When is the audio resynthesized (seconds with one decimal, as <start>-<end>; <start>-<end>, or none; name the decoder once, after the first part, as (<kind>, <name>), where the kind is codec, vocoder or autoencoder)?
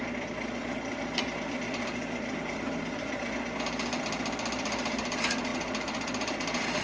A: none